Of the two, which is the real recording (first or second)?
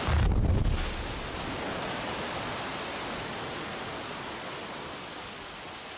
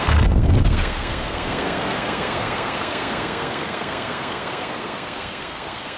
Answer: first